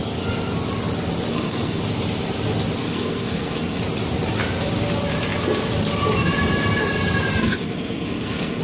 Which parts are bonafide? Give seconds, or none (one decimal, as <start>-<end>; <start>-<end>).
0.0-1.3; 1.8-2.8; 3.8-7.4